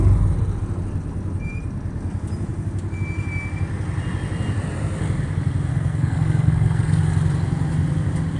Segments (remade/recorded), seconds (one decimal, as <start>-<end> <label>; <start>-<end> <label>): 0.0-5.7 recorded; 5.7-7.0 remade; 7.0-8.4 recorded